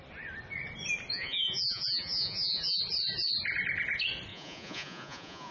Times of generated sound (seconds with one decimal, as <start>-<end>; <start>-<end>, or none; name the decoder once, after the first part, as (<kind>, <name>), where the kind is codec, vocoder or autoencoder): 1.1-2.8 (vocoder, Vocos); 4.3-5.5